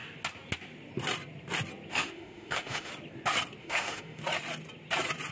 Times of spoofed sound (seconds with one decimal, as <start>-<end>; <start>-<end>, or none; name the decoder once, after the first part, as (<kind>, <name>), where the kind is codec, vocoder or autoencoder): 1.9-2.9 (autoencoder, DAC-VAE); 3.6-4.2